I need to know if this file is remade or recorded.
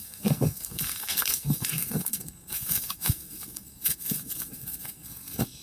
remade